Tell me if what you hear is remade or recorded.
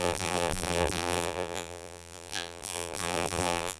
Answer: remade